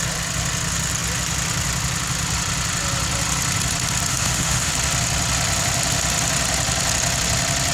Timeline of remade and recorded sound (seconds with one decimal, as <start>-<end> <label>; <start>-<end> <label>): 0.0-4.1 recorded; 4.1-4.7 remade; 4.7-7.7 recorded